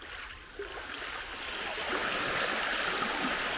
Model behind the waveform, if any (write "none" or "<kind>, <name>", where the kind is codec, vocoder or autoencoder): none